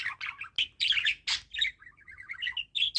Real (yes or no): yes